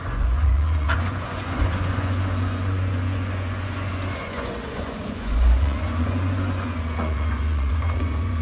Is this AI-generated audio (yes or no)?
yes